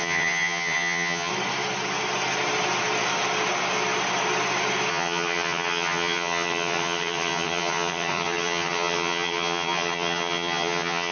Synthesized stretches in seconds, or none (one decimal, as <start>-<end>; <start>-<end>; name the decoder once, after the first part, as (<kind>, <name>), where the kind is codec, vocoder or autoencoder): 0.0-1.3 (vocoder, HiFi-GAN); 4.9-11.1